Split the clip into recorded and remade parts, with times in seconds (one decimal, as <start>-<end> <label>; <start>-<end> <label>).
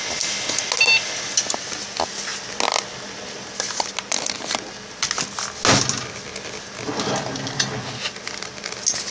0.0-9.1 recorded